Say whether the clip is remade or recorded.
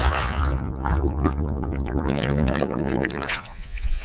remade